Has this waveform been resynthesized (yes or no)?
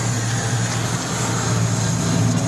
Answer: no